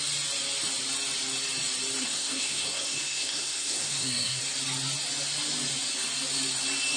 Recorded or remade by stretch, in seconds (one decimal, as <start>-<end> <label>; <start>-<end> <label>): 0.0-2.0 recorded; 2.0-4.4 remade; 4.4-7.0 recorded